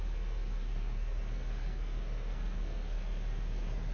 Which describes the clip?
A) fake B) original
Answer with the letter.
A